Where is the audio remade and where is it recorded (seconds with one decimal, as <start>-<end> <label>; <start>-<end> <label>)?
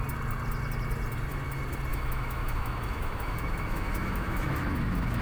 0.0-1.9 recorded; 1.9-5.2 remade